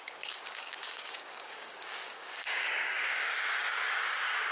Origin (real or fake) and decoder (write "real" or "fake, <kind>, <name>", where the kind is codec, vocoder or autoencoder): fake, codec, DAC